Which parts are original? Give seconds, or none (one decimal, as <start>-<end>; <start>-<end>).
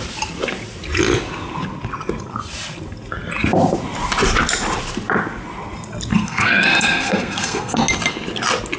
0.0-6.1; 7.8-8.8